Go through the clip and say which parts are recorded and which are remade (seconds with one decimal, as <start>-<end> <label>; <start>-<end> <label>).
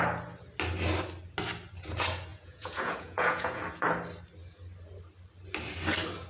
0.0-2.3 recorded; 2.3-3.6 remade; 3.6-6.3 recorded